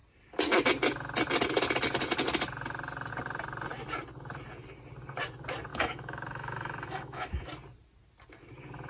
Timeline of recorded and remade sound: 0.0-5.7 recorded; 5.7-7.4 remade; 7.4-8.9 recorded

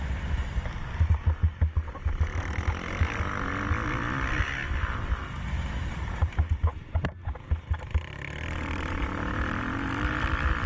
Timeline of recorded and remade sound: 0.0-5.8 recorded; 5.8-7.5 remade; 7.5-10.7 recorded

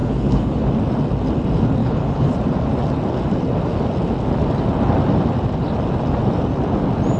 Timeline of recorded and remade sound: 0.0-0.7 remade; 0.7-1.8 recorded; 1.8-2.3 remade; 2.3-7.2 recorded

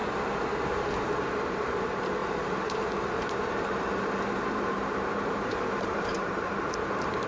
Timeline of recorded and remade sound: 0.0-2.2 recorded; 2.2-6.6 remade; 6.6-7.3 recorded